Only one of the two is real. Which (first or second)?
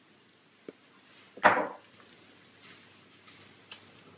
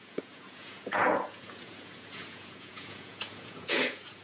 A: first